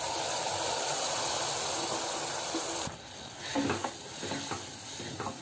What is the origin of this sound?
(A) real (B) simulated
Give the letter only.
A